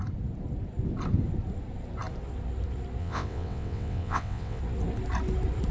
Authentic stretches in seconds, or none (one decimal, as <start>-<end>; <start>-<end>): 0.0-3.0; 4.6-5.7